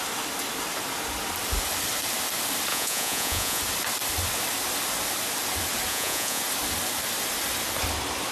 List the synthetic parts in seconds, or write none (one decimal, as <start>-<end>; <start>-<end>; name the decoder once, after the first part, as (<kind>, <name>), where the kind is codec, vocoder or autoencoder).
2.7-3.6 (vocoder, Vocos); 5.9-6.4